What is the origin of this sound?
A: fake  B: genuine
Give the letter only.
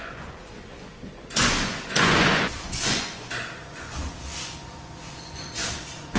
A